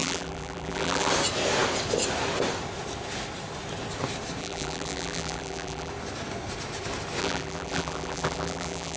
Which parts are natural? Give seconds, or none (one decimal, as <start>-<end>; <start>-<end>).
1.1-4.4; 5.9-7.2